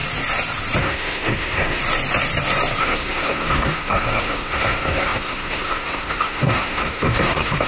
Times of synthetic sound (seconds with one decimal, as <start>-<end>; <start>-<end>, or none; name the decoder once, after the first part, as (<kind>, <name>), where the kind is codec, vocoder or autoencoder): 0.8-1.8 (codec, SNAC); 2.8-7.7